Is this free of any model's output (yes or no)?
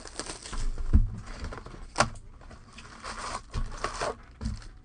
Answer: yes